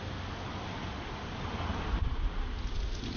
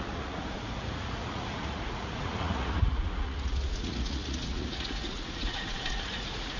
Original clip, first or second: first